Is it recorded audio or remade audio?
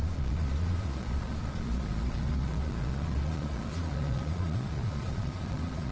remade